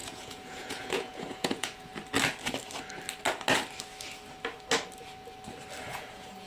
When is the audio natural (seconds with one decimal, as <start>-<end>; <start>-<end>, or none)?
1.9-5.8